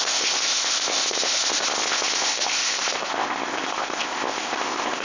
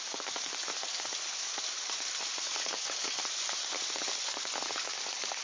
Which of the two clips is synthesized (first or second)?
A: first